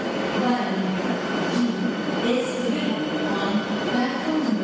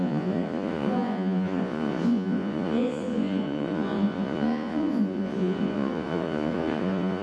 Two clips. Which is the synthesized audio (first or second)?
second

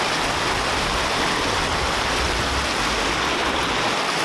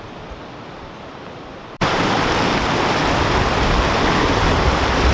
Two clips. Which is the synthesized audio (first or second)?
second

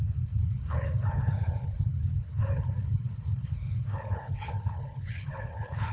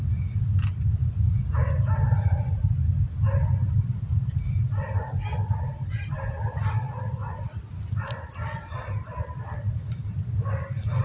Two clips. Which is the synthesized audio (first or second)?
first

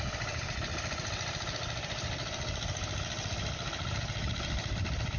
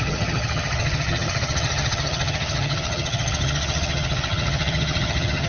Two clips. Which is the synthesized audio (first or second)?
second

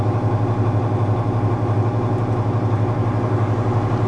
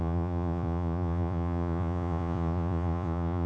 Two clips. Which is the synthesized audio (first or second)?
second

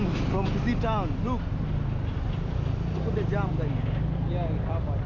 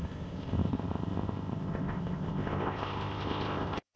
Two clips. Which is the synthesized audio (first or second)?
second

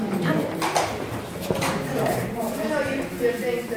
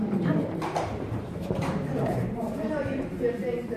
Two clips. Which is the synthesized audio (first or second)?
second